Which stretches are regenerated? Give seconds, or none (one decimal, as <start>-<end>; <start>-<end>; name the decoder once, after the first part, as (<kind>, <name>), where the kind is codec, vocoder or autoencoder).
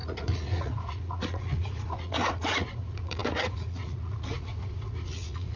0.0-5.6 (vocoder, Vocos)